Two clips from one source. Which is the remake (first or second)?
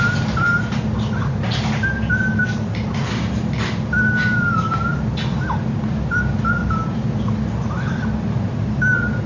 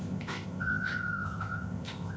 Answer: second